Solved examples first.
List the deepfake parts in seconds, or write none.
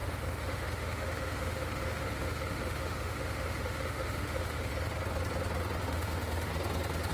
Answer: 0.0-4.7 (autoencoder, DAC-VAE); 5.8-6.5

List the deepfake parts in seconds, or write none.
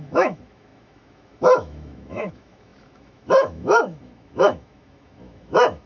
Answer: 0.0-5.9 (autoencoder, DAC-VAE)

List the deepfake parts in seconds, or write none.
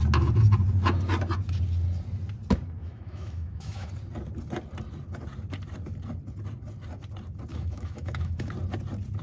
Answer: 2.8-3.9 (autoencoder, DAC-VAE); 7.5-8.5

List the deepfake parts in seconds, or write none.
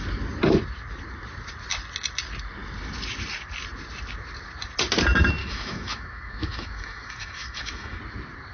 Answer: 5.4-8.0 (autoencoder, DAC-VAE)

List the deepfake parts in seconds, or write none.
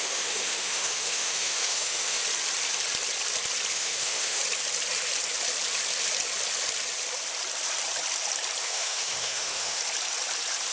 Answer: 0.0-2.2 (autoencoder, DAC-VAE); 3.7-4.4; 8.6-9.8